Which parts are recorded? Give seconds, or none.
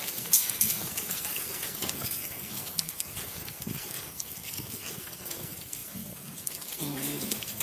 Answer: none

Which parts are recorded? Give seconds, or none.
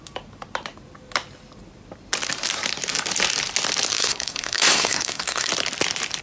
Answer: 0.0-3.9; 5.5-6.2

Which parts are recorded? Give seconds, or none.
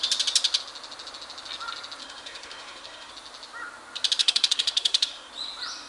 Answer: 0.0-2.0; 3.1-4.2; 5.3-5.9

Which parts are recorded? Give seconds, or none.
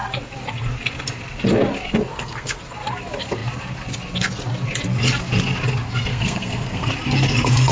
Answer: 0.0-2.1; 2.6-6.1; 6.9-7.7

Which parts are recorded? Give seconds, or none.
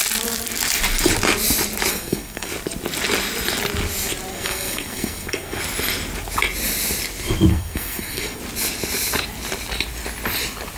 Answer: 0.0-1.9; 2.5-4.3; 5.6-7.5; 8.4-10.8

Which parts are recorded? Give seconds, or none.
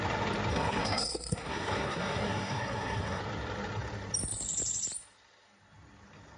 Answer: 0.0-0.5; 3.2-6.4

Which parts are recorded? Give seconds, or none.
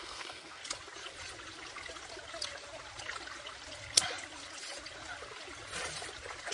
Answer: 0.6-6.5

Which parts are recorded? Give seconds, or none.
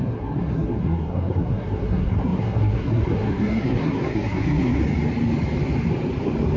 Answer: 4.8-6.6